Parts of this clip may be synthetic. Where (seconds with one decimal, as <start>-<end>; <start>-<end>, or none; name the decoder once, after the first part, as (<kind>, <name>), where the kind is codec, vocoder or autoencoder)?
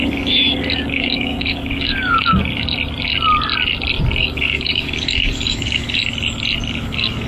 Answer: 0.0-2.4 (codec, DAC); 4.2-6.0; 6.7-7.3